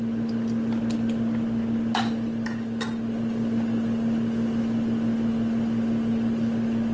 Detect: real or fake real